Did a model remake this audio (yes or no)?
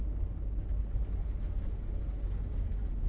no